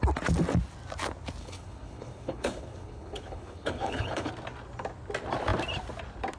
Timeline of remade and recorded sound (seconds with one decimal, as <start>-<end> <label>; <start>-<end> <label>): 0.0-1.4 recorded; 1.4-4.3 remade; 4.3-6.4 recorded